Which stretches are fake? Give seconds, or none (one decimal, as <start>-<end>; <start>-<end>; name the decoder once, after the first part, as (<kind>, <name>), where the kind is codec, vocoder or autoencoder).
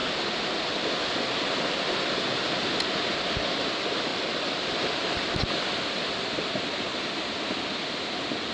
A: 4.1-4.9 (vocoder, BigVGAN v2)